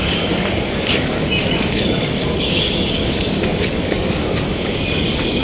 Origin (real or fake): fake